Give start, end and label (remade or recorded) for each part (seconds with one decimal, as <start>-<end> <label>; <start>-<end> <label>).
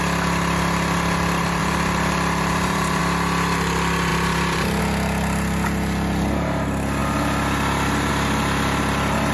0.0-1.6 recorded; 1.6-3.0 remade; 3.0-4.1 recorded; 4.1-4.8 remade; 4.8-9.3 recorded